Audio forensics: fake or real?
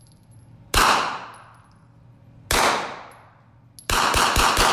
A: real